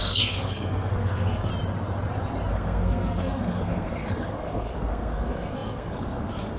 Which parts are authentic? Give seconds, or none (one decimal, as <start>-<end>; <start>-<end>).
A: 1.5-2.5